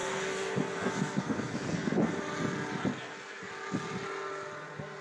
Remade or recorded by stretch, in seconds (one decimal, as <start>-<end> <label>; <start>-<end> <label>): 0.0-2.2 remade; 2.2-2.9 recorded; 2.9-3.5 remade; 3.5-5.0 recorded